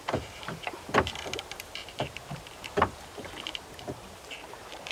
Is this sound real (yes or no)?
no